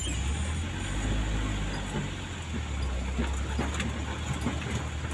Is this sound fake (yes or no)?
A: no